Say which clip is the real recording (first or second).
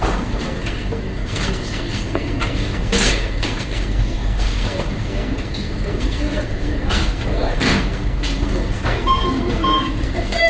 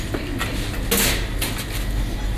second